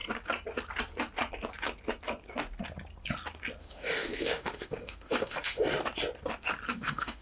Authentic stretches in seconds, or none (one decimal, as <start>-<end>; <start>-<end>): 0.0-3.6; 5.6-6.7